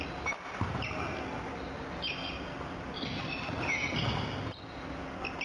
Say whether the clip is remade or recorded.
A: recorded